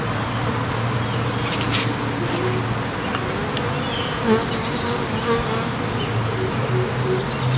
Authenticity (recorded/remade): recorded